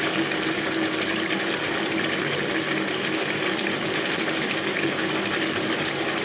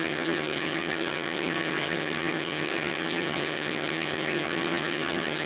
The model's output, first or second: second